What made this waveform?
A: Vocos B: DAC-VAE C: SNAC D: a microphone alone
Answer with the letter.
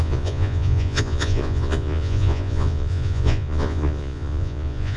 A